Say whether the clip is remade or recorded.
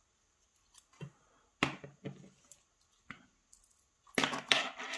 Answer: recorded